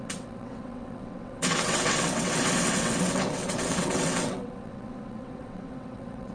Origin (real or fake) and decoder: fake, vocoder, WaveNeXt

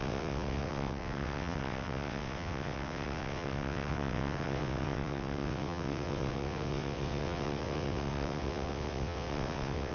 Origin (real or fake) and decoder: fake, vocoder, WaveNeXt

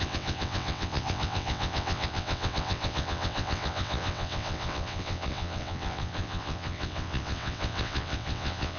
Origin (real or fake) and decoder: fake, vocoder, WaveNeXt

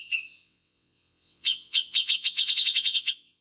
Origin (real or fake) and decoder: fake, vocoder, WaveNeXt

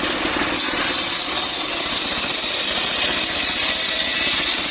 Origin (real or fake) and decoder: real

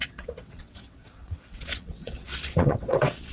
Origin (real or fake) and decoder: fake, vocoder, WaveNeXt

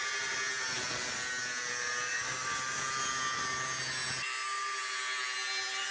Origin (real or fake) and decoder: real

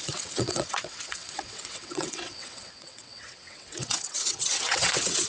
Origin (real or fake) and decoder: fake, vocoder, WaveNeXt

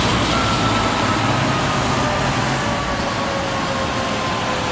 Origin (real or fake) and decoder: real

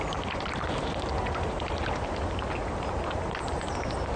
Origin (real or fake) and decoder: real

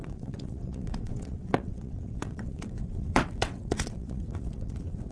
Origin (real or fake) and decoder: fake, vocoder, WaveNeXt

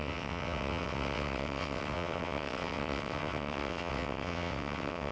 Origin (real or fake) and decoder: fake, vocoder, WaveNeXt